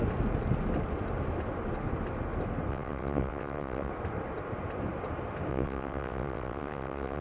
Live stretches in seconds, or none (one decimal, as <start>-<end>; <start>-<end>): 0.0-2.7; 3.9-5.5